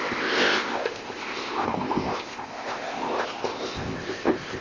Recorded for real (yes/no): no